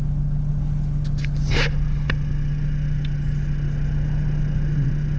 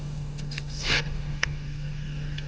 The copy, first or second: second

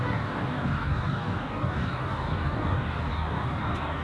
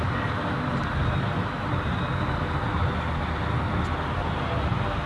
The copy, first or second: first